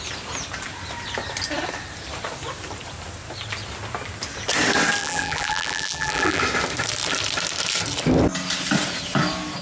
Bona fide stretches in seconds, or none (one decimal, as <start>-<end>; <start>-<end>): 0.0-5.0; 6.4-9.6